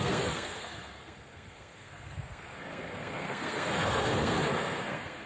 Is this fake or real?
fake